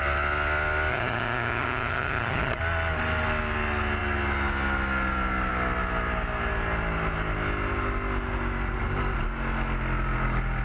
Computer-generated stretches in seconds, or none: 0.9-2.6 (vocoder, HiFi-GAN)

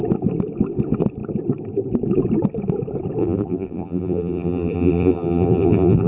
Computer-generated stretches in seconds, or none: 3.2-6.1 (vocoder, BigVGAN v2)

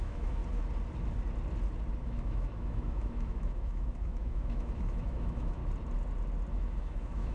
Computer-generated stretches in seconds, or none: 0.0-0.4 (autoencoder, DAC-VAE); 2.0-5.6; 6.5-7.3